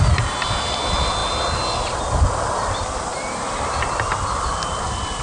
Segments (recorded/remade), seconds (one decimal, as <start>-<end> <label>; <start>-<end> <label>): 0.0-3.1 recorded; 3.1-3.7 remade; 3.7-5.2 recorded